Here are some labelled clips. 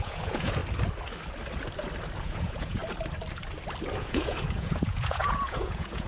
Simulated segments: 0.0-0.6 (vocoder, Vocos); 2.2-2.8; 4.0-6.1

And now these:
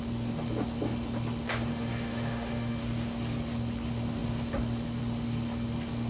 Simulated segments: 1.7-2.8 (autoencoder, DAC-VAE)

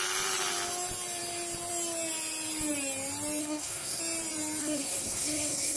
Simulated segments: 3.4-4.0 (codec, SNAC); 4.6-5.8